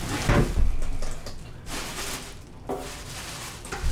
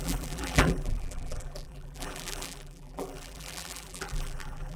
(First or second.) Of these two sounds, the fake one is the second